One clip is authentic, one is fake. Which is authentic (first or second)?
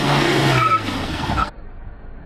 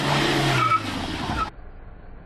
second